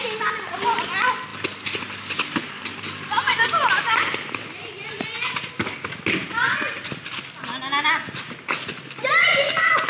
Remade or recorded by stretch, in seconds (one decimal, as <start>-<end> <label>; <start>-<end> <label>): 0.0-9.9 recorded